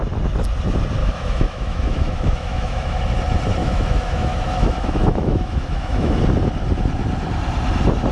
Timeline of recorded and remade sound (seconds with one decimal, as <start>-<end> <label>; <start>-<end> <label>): 0.0-1.0 recorded; 1.0-3.0 remade; 3.0-3.6 recorded; 3.6-6.2 remade; 6.2-8.1 recorded